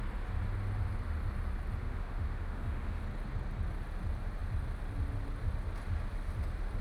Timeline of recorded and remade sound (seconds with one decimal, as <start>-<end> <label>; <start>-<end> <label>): 0.0-1.8 recorded; 1.8-3.0 remade; 3.0-6.8 recorded